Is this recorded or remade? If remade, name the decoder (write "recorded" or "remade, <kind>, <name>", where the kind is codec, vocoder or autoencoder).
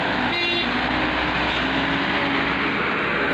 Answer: recorded